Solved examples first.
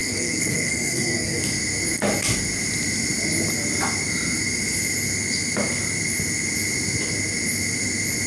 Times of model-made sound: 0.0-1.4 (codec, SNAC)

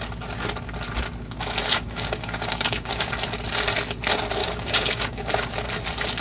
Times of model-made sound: 1.6-3.1 (codec, DAC); 4.4-5.3

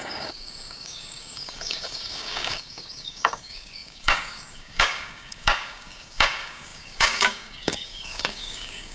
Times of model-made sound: 0.0-8.9 (codec, DAC)

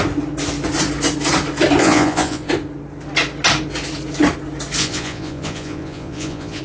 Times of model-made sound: 1.8-2.5 (vocoder, Vocos); 4.8-6.6

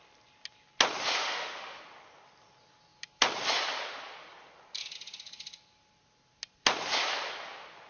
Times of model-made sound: 1.2-1.8 (autoencoder, DAC-VAE)

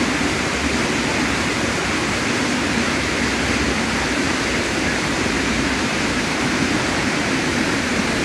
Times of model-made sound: 0.0-0.5 (vocoder, BigVGAN v2); 1.3-1.8; 5.1-8.2